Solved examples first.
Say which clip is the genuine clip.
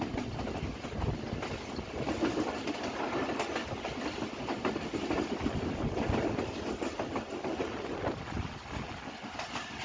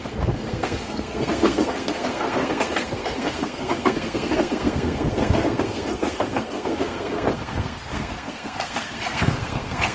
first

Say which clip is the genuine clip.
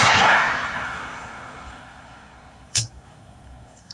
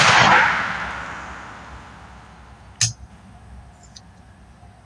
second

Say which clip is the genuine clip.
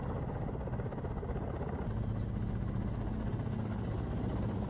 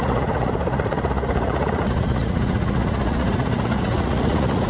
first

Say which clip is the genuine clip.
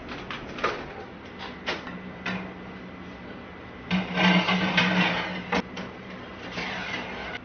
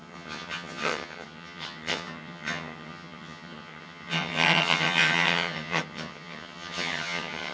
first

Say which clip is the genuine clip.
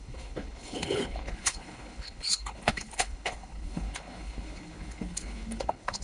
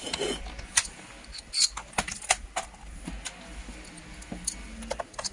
second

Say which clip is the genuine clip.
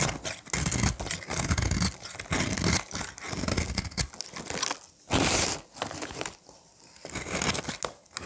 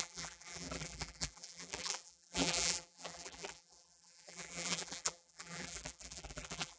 first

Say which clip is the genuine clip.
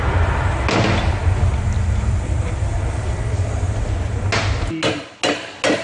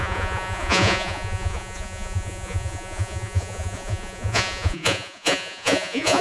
first